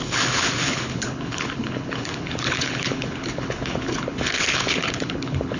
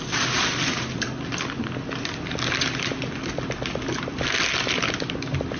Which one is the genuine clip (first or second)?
second